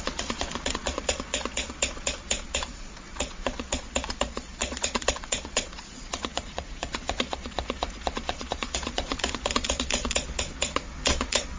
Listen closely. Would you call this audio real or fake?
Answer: fake